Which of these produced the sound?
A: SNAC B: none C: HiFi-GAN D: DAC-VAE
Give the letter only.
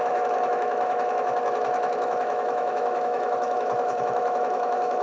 D